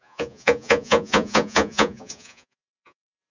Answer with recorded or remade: remade